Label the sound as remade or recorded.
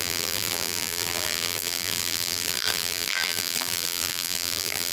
remade